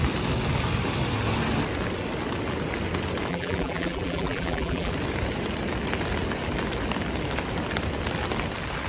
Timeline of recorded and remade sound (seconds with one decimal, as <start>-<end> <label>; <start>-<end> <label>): 0.0-3.3 recorded; 3.3-4.9 remade; 4.9-8.9 recorded